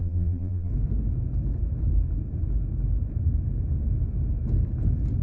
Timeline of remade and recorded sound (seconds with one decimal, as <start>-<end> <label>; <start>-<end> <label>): 0.0-0.7 remade; 0.7-5.2 recorded